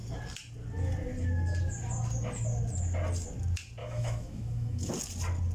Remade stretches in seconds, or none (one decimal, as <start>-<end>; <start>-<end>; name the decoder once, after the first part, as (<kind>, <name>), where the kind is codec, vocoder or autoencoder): 3.8-4.9 (autoencoder, DAC-VAE)